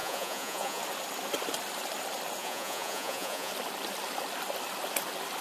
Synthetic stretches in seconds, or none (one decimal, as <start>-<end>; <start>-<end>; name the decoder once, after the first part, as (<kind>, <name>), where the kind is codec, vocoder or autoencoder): 0.0-0.8 (vocoder, Vocos); 2.4-3.5